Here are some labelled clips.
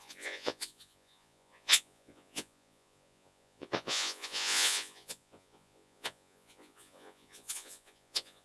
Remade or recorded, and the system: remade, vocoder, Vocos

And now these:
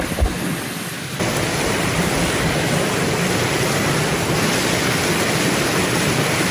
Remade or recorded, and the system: recorded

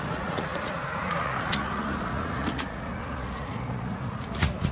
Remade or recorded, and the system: remade, vocoder, Vocos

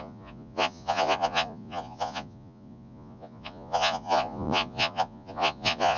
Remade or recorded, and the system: remade, vocoder, Vocos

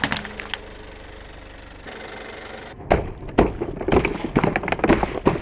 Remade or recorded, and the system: recorded